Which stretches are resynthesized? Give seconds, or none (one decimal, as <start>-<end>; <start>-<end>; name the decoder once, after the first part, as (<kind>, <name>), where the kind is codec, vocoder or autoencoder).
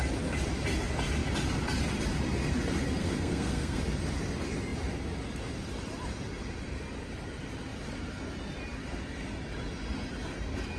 3.0-3.8 (codec, SNAC)